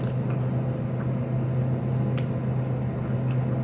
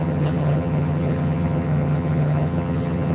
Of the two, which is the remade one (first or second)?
second